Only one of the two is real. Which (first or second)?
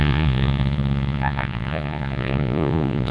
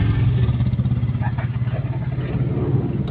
second